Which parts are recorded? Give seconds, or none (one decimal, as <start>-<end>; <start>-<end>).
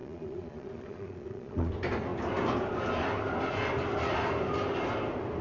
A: 1.7-5.4